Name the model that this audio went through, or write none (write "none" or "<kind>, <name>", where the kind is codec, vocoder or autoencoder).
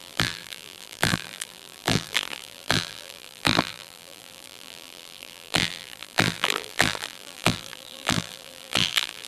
vocoder, BigVGAN v2